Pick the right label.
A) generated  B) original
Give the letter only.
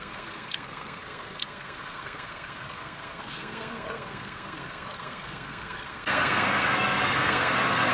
A